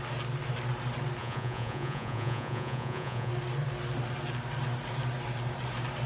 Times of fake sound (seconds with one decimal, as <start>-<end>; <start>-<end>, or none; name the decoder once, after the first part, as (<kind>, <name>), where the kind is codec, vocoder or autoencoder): 1.2-3.3 (vocoder, Vocos)